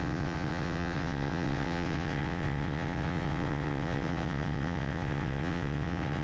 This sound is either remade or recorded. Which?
remade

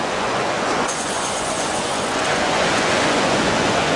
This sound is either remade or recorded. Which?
remade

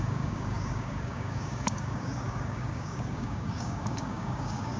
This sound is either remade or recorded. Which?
remade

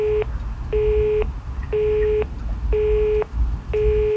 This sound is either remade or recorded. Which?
recorded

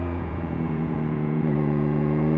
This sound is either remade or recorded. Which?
remade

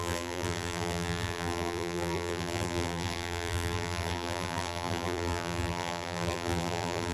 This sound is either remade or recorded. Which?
remade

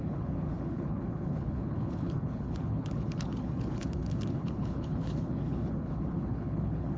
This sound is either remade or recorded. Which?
remade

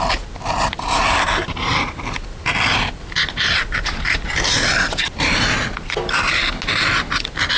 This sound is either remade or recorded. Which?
recorded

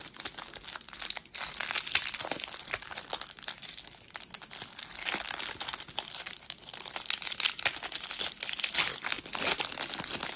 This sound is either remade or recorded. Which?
recorded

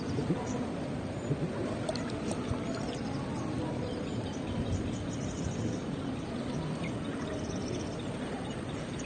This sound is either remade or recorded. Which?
recorded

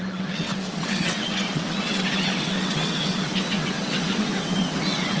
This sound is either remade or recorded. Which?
remade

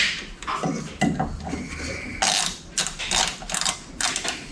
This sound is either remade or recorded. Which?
recorded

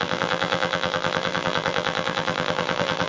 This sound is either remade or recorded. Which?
remade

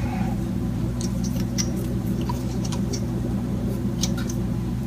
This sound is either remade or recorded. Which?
remade